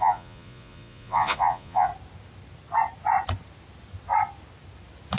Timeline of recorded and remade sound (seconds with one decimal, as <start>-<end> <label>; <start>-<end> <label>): 0.0-1.9 remade; 1.9-5.2 recorded